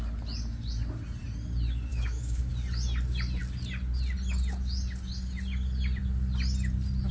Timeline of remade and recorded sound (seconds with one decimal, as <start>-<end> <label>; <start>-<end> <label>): 0.0-1.9 recorded; 1.9-2.5 remade; 2.5-7.1 recorded